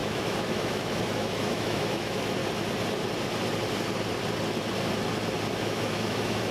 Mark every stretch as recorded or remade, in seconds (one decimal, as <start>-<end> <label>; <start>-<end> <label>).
0.0-2.4 remade; 2.4-5.6 recorded; 5.6-6.5 remade